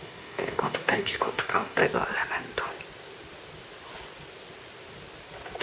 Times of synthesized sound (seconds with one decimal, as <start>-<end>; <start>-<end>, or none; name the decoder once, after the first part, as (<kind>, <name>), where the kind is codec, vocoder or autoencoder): 0.0-1.8 (codec, DAC)